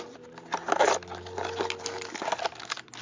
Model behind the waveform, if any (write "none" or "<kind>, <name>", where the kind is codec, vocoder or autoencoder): none